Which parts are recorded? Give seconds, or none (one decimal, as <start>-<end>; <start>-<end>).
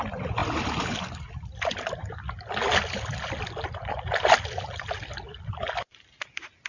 0.0-6.7